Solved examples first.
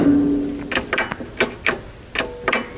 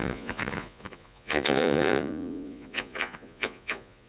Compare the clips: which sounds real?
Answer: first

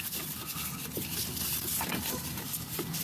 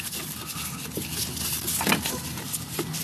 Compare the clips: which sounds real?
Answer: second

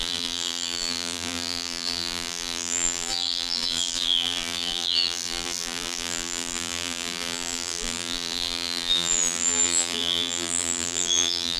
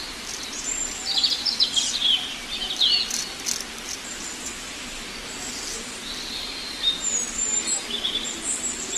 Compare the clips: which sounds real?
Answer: second